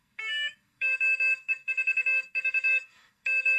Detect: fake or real fake